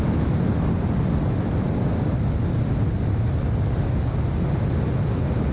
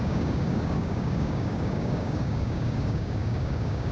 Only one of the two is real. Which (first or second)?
first